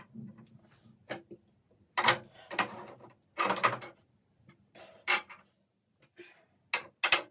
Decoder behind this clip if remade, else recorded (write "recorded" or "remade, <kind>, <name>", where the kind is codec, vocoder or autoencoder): recorded